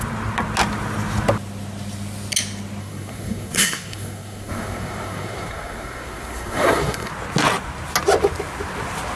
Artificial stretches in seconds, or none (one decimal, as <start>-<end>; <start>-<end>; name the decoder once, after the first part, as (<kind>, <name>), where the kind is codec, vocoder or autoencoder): 2.8-7.1 (codec, SNAC)